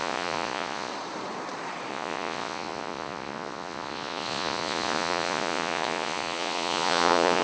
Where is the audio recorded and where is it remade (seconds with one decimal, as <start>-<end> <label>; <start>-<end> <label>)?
0.0-0.9 remade; 0.9-1.9 recorded; 1.9-7.4 remade

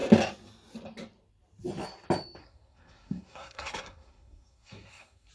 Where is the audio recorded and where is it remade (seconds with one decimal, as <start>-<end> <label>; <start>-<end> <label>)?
0.0-2.4 recorded; 2.4-5.3 remade

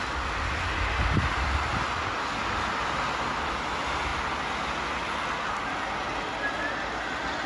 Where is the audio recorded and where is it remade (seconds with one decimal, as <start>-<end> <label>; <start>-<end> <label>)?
0.0-7.5 recorded

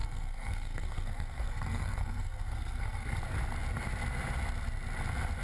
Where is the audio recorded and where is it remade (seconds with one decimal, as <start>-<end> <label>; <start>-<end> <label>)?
0.0-3.2 remade; 3.2-5.4 recorded

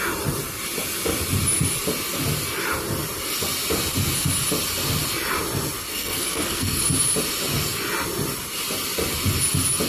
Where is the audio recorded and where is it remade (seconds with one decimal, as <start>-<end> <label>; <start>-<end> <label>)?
0.0-5.9 recorded; 5.9-6.8 remade; 6.8-9.9 recorded

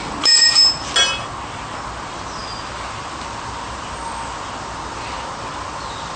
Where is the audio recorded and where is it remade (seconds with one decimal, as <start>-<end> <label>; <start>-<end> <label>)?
0.0-6.2 recorded

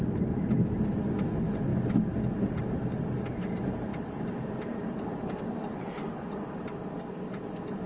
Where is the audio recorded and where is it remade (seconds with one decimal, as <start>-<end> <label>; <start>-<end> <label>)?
0.0-1.7 remade; 1.7-3.0 recorded; 3.0-7.9 remade

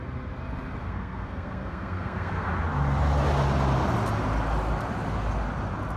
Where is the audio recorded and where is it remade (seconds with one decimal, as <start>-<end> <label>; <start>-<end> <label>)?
0.0-0.8 recorded; 0.8-2.5 remade; 2.5-6.0 recorded